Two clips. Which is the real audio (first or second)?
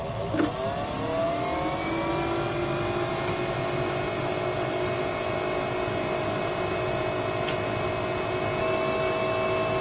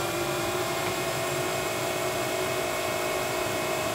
first